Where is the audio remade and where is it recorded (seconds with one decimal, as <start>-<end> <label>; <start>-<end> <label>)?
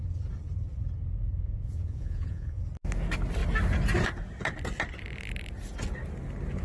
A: 0.0-1.3 recorded; 1.3-2.6 remade; 2.6-6.6 recorded